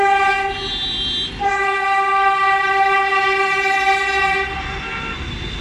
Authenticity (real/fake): real